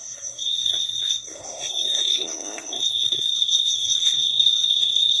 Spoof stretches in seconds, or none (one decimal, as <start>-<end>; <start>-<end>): 0.0-5.2